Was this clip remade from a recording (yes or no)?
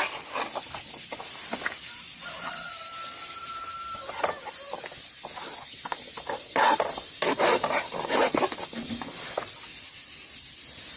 yes